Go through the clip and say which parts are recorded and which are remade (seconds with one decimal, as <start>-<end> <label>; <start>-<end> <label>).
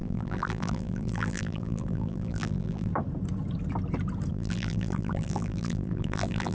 0.0-2.9 remade; 2.9-4.3 recorded; 4.3-6.5 remade